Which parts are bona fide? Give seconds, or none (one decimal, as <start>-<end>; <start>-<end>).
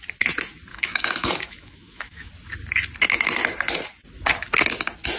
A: 0.0-0.7; 2.3-5.2